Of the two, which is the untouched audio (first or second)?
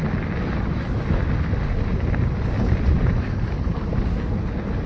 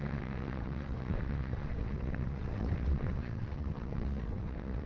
first